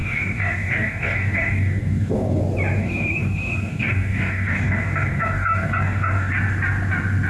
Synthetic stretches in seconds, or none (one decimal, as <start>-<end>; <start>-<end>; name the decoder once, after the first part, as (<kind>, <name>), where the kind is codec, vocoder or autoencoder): 0.0-2.4 (codec, DAC); 2.8-6.3